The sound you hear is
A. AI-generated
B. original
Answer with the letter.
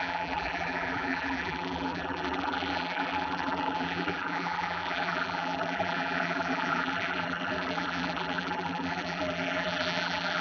A